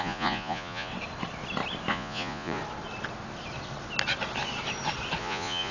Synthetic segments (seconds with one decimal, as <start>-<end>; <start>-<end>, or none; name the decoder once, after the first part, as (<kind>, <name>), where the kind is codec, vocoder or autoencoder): 0.0-0.9 (vocoder, Vocos); 1.9-2.6; 5.2-5.7